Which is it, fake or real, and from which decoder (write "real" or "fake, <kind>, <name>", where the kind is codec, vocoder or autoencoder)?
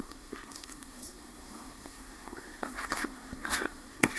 fake, codec, SNAC